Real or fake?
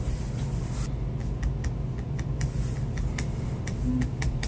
real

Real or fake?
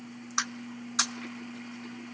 real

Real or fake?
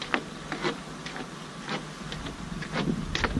real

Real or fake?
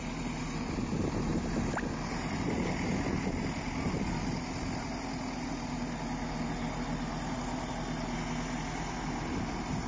real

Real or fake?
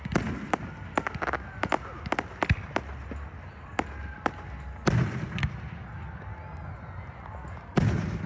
real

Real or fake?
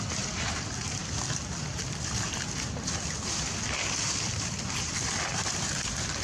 real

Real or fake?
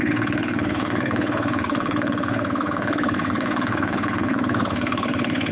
fake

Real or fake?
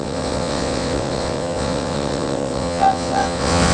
fake